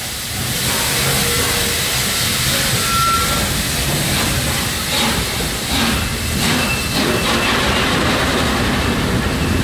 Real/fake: real